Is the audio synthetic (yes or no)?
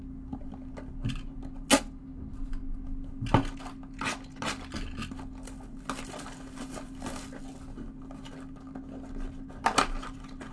no